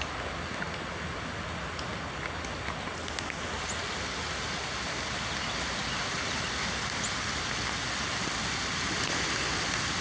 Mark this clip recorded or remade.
recorded